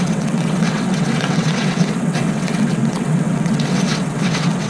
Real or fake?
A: fake